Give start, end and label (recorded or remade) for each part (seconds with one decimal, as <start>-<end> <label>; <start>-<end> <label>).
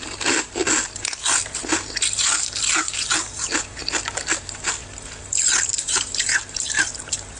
0.0-0.6 remade; 0.6-1.4 recorded; 1.4-3.8 remade; 3.8-4.3 recorded; 4.3-4.8 remade; 4.8-5.7 recorded; 5.7-7.4 remade